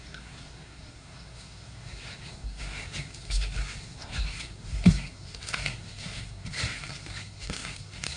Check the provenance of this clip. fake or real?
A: fake